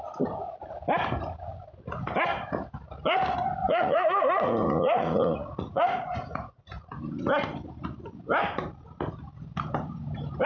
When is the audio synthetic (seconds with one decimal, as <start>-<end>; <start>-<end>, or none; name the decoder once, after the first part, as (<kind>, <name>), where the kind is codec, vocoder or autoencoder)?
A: 3.6-7.0 (vocoder, Vocos)